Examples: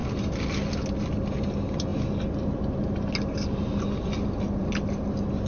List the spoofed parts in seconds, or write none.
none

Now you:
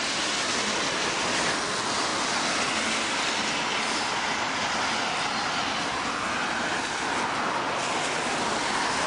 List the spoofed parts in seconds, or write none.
none

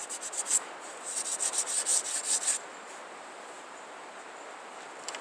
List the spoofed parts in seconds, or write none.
none

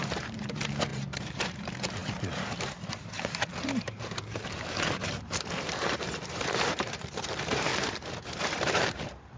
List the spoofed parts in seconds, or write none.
0.0-7.7 (vocoder, BigVGAN v2); 8.4-9.4

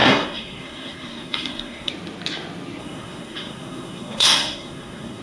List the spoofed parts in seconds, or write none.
0.0-1.9 (codec, SNAC); 2.8-5.2

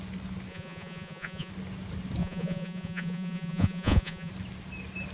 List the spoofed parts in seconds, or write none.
0.5-1.5 (vocoder, Vocos); 2.2-4.3

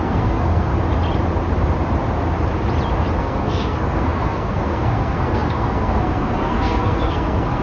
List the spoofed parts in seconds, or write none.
0.0-0.7 (codec, SNAC); 3.2-7.6

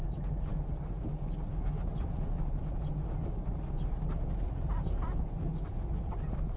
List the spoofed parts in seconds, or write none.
none